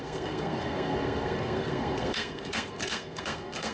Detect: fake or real fake